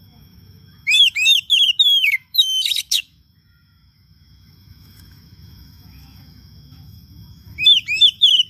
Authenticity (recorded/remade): remade